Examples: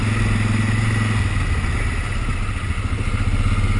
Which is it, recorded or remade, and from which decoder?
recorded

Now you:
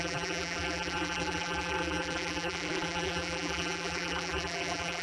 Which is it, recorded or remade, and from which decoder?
remade, vocoder, BigVGAN v2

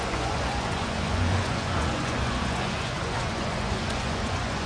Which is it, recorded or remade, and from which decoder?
remade, vocoder, Vocos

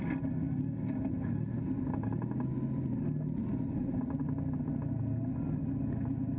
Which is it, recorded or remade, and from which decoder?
recorded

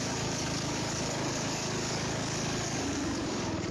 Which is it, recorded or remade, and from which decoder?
remade, codec, DAC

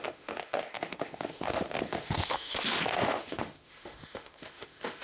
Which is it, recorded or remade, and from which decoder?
remade, autoencoder, DAC-VAE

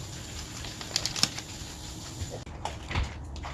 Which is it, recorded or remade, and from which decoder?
recorded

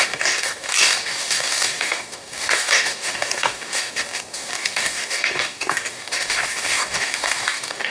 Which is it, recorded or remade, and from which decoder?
remade, codec, DAC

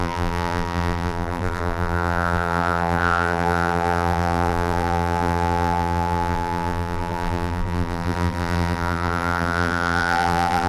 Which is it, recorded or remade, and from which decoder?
remade, vocoder, BigVGAN v2